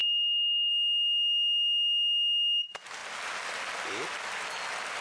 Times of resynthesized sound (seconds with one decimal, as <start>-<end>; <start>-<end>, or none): 0.0-0.7